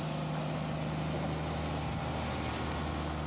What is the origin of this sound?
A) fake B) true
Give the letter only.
B